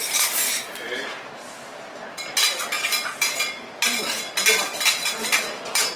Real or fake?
fake